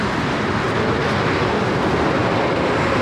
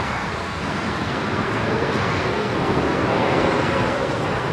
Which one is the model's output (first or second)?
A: second